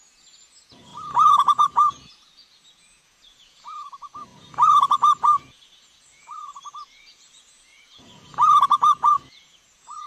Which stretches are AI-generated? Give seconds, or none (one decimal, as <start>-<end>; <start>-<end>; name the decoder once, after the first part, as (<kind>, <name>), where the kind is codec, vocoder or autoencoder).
0.0-10.1 (vocoder, Vocos)